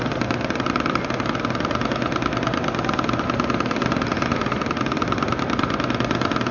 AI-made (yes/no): no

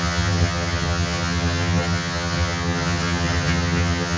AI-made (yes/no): yes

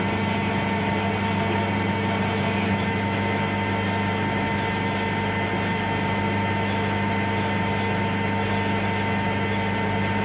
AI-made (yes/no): no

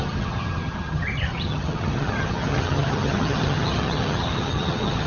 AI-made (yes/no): yes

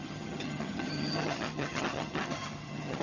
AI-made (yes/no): yes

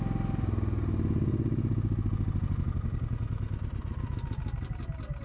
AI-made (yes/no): no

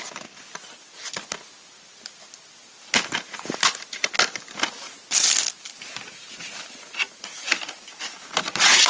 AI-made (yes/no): no